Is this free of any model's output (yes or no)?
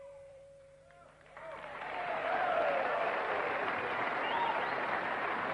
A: no